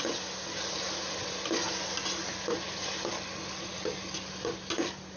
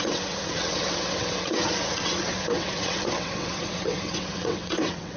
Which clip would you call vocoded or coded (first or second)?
second